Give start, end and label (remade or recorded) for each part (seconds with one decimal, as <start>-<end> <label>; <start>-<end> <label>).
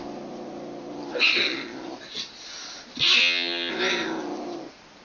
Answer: 0.0-3.2 recorded; 3.2-3.7 remade; 3.7-5.0 recorded